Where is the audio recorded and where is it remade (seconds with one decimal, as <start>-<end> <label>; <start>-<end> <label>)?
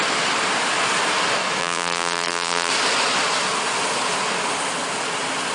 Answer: 0.0-1.6 recorded; 1.6-2.7 remade; 2.7-5.5 recorded